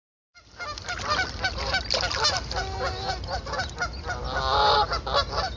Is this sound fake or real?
real